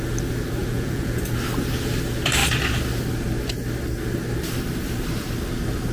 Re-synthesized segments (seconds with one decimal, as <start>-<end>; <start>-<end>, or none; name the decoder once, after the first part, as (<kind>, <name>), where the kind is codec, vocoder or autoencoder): 0.6-1.2 (vocoder, Vocos)